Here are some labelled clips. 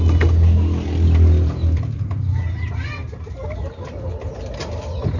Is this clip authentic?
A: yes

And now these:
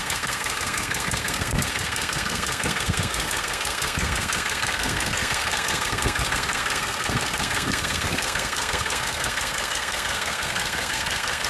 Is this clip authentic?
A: no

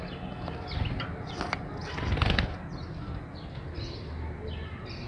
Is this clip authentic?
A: yes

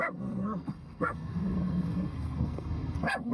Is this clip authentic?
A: no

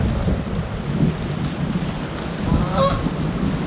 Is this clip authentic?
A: yes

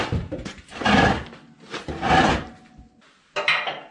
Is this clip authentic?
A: yes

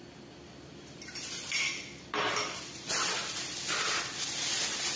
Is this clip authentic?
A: yes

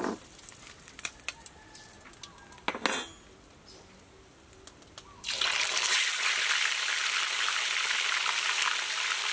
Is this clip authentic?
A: yes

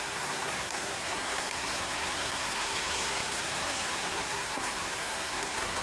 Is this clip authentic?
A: no